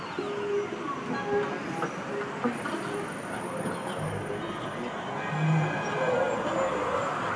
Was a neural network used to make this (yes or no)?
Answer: no